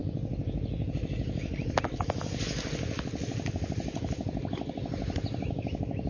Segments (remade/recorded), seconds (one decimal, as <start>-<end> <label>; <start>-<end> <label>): 0.0-6.1 recorded

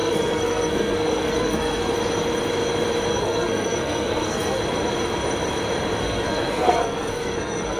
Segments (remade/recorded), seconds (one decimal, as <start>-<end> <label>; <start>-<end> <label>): 0.0-1.9 remade; 1.9-3.1 recorded; 3.1-4.6 remade; 4.6-6.0 recorded; 6.0-7.8 remade

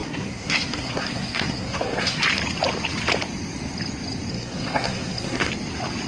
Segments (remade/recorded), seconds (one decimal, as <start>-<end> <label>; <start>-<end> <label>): 0.0-2.2 remade; 2.2-4.3 recorded; 4.3-5.5 remade; 5.5-6.1 recorded

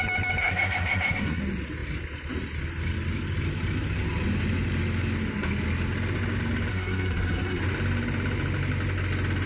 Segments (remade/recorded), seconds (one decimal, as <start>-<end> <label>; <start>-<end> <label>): 0.0-0.4 recorded; 0.4-1.4 remade; 1.4-6.7 recorded; 6.7-7.6 remade; 7.6-9.5 recorded

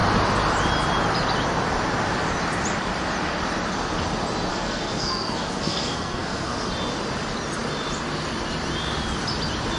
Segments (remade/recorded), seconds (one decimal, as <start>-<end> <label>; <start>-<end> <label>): 0.0-4.5 recorded; 4.5-6.7 remade; 6.7-9.8 recorded